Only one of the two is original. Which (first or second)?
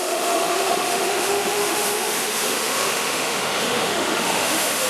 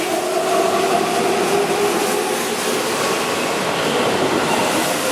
second